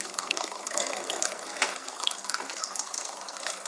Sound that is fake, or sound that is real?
fake